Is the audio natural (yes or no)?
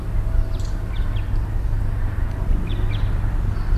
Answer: yes